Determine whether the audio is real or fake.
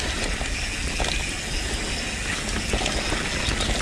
real